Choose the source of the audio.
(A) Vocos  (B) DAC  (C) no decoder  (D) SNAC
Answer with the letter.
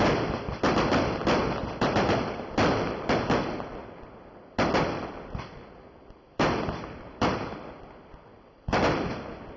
C